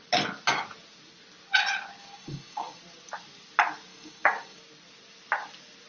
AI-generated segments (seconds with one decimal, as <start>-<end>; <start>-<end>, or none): 2.0-2.8; 3.9-4.6